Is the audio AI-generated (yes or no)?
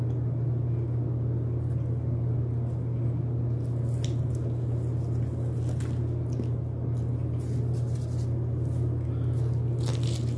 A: no